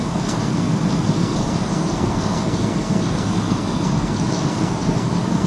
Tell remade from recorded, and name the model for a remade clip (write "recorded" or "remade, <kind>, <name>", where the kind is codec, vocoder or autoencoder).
remade, codec, SNAC